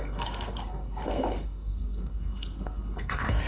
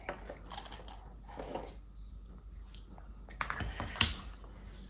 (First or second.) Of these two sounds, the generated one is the first